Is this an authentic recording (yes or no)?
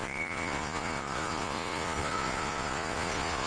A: no